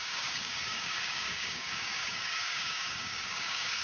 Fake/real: fake